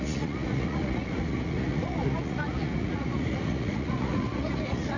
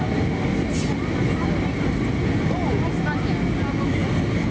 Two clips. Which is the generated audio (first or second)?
first